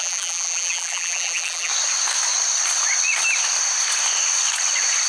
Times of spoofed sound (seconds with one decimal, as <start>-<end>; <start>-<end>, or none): 0.0-1.7